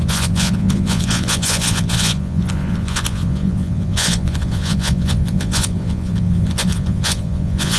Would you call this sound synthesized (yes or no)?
yes